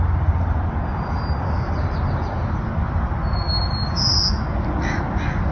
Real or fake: real